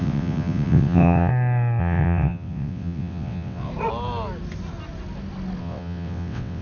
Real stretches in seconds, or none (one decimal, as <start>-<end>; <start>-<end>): 1.3-1.8; 3.7-5.6